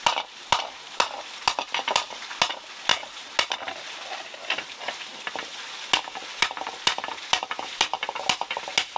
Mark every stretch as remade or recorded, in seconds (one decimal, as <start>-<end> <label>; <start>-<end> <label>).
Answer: 0.0-9.0 recorded